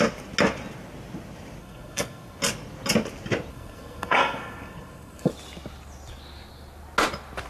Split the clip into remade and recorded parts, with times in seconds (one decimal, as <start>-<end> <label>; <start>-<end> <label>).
0.0-1.6 recorded; 1.6-2.4 remade; 2.4-3.5 recorded; 3.5-5.3 remade; 5.3-7.5 recorded